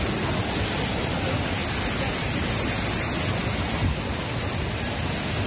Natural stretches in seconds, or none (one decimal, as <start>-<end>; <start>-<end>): 0.0-5.5